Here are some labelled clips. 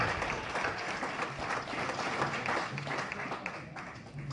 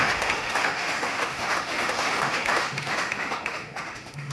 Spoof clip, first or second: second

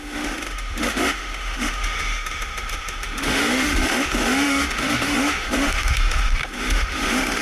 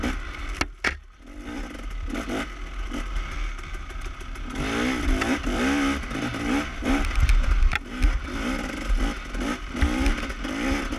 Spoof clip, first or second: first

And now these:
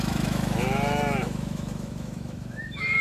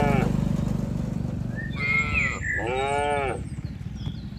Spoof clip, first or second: first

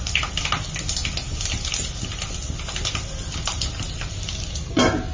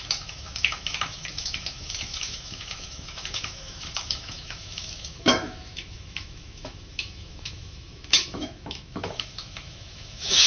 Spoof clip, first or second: second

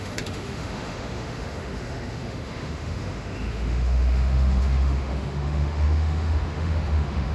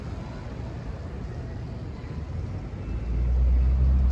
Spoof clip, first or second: first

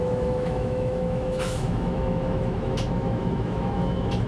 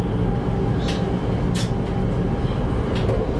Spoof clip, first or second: first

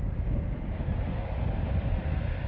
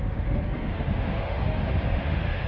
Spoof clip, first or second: second